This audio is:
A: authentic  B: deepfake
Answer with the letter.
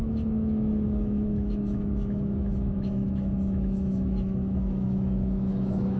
B